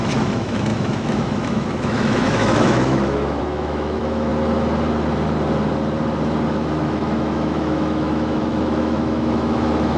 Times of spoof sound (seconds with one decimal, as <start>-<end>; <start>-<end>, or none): 0.0-4.3; 6.5-10.0